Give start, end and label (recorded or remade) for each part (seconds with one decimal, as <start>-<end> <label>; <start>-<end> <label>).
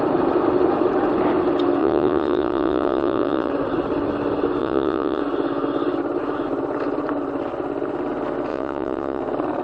0.0-1.8 recorded; 1.8-3.5 remade; 3.5-4.6 recorded; 4.6-5.2 remade; 5.2-8.5 recorded; 8.5-9.2 remade; 9.2-9.6 recorded